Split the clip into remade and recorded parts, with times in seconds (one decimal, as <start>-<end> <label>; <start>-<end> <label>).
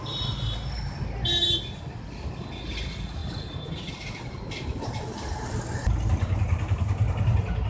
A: 0.0-3.2 recorded; 3.2-5.5 remade; 5.5-7.7 recorded